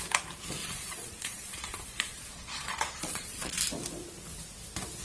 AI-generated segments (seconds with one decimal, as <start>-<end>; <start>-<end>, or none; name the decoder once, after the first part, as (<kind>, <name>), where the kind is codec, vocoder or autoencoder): 0.6-3.6 (vocoder, Vocos)